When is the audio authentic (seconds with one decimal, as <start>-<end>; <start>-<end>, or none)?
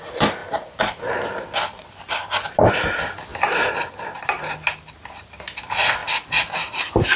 0.0-7.2